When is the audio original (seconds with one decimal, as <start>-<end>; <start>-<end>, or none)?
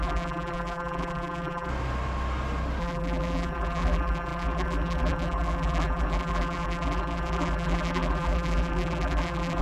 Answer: 1.7-2.8